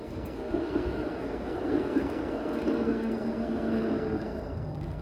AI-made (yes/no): yes